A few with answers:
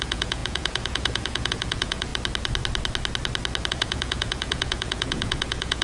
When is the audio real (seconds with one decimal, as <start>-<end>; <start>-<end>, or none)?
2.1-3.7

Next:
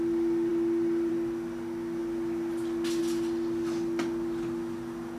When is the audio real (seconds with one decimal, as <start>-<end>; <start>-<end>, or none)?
0.0-5.2

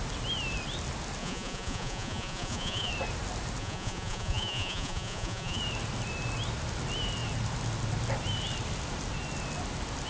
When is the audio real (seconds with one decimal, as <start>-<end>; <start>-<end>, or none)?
0.0-1.2; 2.9-3.6; 5.6-10.1

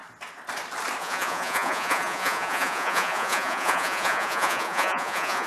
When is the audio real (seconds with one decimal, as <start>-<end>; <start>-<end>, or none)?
0.0-1.0